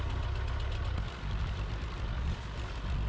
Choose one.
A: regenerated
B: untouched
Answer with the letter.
B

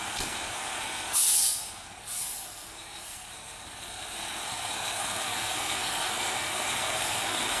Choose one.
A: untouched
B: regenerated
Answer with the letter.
B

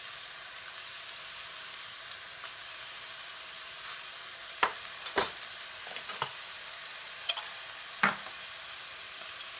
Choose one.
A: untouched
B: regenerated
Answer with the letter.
A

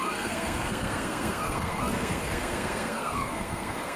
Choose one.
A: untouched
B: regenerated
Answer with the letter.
B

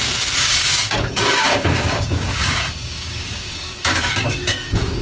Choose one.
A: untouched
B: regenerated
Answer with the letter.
B